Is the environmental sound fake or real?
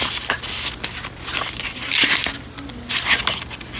real